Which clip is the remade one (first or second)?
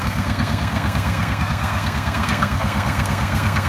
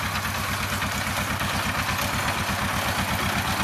first